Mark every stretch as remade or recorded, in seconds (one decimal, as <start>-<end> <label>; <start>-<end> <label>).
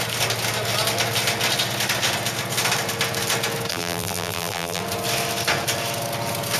0.0-3.7 recorded; 3.7-4.8 remade; 4.8-6.6 recorded